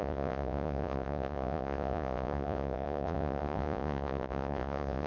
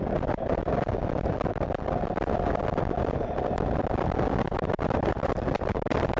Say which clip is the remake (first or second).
first